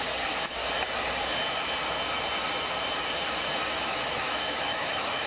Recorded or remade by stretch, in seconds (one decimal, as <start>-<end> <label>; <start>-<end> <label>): 0.0-0.6 remade; 0.6-3.8 recorded; 3.8-5.3 remade